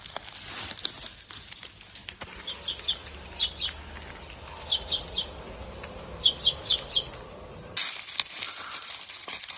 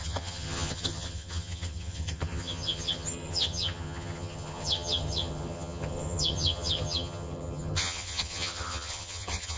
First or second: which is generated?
second